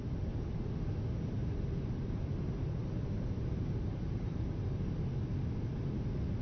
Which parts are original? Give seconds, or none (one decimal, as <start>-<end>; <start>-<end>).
0.0-1.4; 5.1-6.4